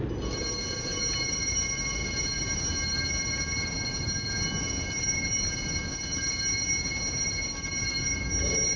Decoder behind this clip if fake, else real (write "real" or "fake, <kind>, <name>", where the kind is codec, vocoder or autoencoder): real